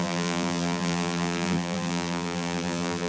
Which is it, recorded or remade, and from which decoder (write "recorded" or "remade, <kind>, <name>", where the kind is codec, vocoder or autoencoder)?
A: remade, vocoder, BigVGAN v2